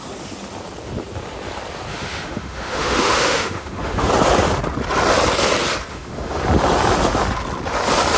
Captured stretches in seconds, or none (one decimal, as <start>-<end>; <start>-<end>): 0.0-1.9; 4.1-5.9; 6.4-8.2